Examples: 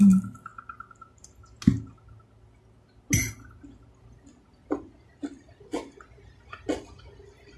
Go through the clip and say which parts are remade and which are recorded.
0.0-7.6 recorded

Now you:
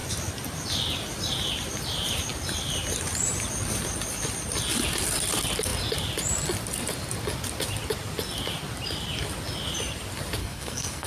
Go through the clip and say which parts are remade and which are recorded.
0.0-10.4 recorded; 10.4-11.1 remade

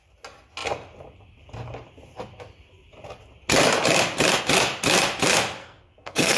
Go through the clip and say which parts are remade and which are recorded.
0.0-5.6 recorded; 5.6-6.4 remade

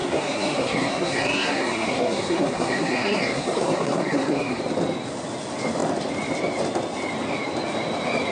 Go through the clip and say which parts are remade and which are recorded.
0.0-4.6 remade; 4.6-8.3 recorded

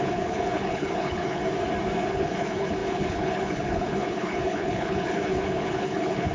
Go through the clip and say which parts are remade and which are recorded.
0.0-1.4 remade; 1.4-2.1 recorded; 2.1-6.3 remade

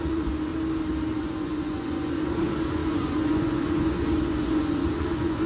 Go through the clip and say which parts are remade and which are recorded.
0.0-0.5 remade; 0.5-1.2 recorded; 1.2-5.5 remade